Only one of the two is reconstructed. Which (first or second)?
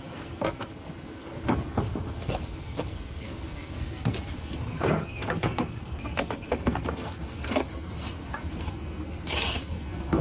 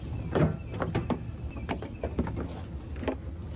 first